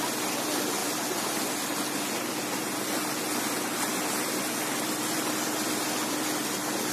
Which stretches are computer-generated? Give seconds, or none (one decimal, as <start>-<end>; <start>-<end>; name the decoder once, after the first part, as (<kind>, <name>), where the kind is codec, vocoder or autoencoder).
none